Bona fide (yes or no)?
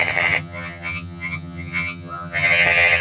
no